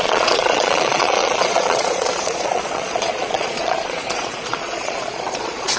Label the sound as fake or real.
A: fake